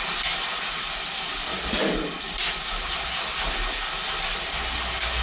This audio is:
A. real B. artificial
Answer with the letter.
A